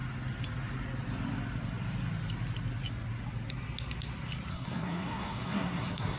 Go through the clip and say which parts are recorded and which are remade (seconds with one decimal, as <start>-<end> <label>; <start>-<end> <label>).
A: 0.0-4.5 recorded; 4.5-6.2 remade